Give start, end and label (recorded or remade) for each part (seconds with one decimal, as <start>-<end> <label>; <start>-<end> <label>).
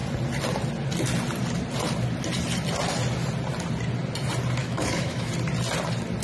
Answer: 0.0-4.6 recorded; 4.6-5.3 remade; 5.3-6.2 recorded